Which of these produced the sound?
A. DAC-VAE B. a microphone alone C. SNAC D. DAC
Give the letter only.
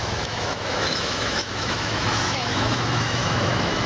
A